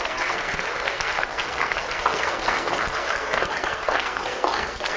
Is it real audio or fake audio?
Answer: fake